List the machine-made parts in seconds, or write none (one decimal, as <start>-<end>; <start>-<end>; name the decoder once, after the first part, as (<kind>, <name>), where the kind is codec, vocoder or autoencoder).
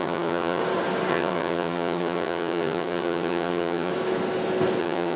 0.0-0.6 (vocoder, HiFi-GAN); 1.1-3.9; 4.8-5.2